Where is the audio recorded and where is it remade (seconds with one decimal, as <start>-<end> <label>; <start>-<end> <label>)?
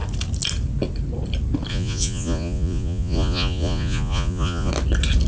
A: 0.0-1.7 recorded; 1.7-4.7 remade; 4.7-5.3 recorded